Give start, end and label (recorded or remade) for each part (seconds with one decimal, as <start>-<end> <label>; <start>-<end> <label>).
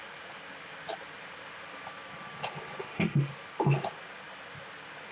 0.0-2.8 recorded; 2.8-3.3 remade; 3.3-5.1 recorded